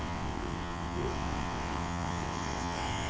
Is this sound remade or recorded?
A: remade